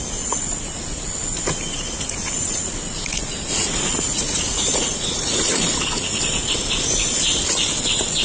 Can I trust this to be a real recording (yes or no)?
no